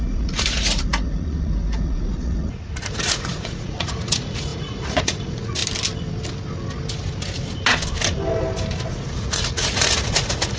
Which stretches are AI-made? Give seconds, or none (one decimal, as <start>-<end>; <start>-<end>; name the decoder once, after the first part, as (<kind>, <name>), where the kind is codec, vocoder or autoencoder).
0.0-5.6 (vocoder, Vocos); 8.9-10.6